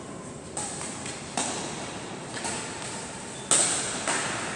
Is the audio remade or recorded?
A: recorded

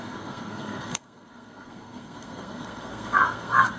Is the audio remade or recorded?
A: remade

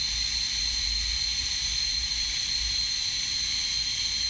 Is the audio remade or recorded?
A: recorded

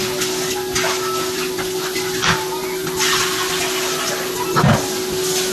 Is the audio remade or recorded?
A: recorded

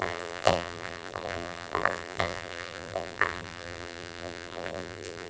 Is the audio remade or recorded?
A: remade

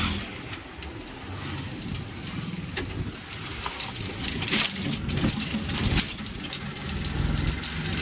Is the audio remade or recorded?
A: recorded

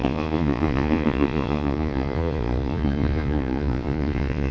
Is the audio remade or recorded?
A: remade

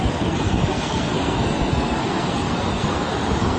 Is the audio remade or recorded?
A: remade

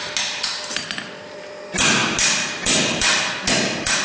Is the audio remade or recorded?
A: recorded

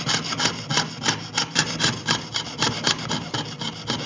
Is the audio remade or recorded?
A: recorded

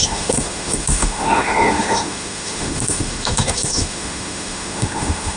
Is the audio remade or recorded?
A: remade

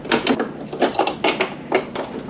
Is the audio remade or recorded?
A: recorded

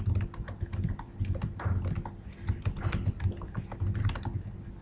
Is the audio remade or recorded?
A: recorded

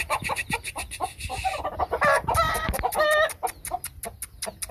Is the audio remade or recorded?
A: recorded